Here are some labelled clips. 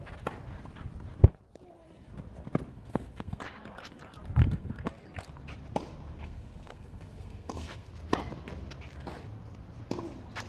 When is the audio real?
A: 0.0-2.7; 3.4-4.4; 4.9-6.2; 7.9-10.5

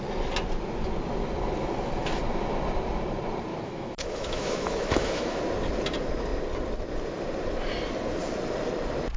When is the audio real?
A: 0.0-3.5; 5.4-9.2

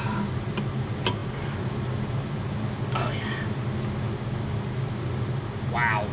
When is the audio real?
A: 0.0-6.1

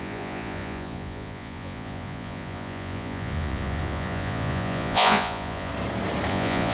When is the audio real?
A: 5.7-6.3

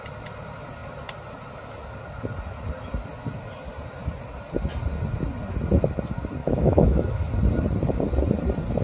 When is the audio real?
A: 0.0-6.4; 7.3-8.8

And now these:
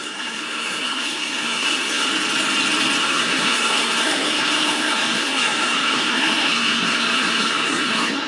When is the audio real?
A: 2.1-3.0

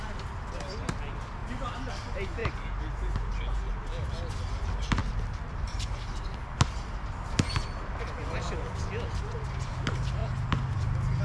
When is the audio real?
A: 0.0-11.2